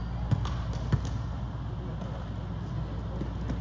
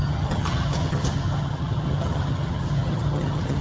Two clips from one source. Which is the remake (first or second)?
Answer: second